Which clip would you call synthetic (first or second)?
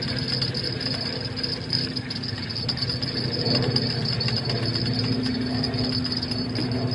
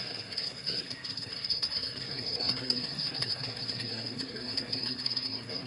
second